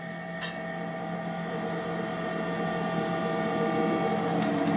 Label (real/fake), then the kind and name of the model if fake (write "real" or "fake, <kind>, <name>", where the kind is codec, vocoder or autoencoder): real